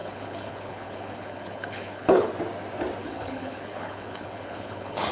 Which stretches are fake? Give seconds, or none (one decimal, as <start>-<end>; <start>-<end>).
0.0-2.3; 3.0-5.1